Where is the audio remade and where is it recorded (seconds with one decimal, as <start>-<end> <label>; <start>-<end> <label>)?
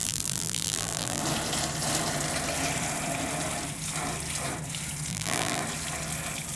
0.0-1.2 remade; 1.2-5.1 recorded; 5.1-5.6 remade; 5.6-6.6 recorded